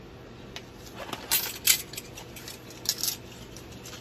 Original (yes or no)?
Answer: yes